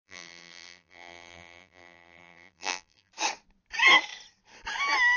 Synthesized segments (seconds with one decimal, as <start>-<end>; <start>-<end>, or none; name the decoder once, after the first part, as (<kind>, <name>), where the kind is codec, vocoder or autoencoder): 0.0-3.1 (vocoder, BigVGAN v2)